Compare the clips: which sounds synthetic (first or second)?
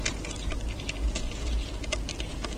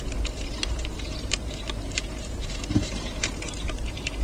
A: second